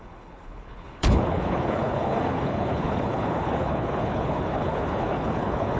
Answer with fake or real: fake